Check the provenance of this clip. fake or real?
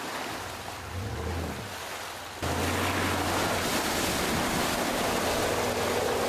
real